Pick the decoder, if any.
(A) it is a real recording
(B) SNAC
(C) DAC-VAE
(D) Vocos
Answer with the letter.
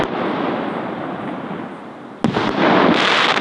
A